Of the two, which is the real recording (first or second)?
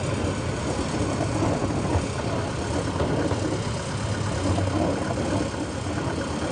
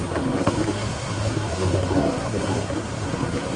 first